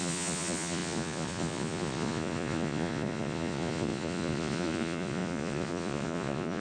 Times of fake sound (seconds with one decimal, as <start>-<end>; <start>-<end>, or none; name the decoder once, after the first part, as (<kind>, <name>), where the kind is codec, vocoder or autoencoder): 0.0-6.6 (vocoder, Vocos)